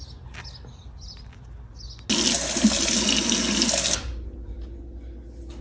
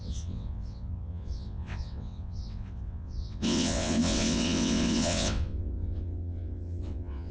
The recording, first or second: first